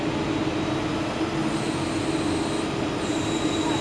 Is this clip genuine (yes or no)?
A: yes